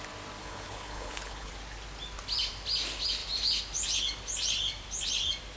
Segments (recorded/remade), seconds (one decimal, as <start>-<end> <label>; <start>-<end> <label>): 0.0-0.4 recorded; 0.4-1.5 remade; 1.5-5.6 recorded